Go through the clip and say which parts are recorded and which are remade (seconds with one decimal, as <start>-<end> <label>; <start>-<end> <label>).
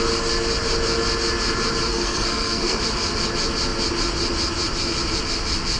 0.0-1.9 recorded; 1.9-2.8 remade; 2.8-5.8 recorded